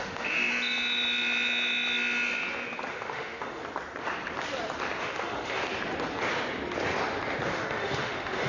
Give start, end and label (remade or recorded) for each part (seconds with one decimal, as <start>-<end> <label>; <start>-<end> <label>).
0.0-0.5 remade; 0.5-2.9 recorded; 2.9-3.6 remade; 3.6-5.0 recorded; 5.0-5.6 remade; 5.6-7.5 recorded; 7.5-8.5 remade